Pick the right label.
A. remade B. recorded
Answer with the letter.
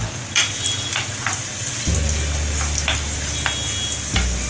B